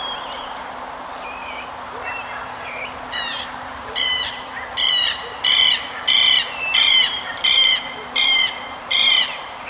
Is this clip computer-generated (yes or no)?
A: yes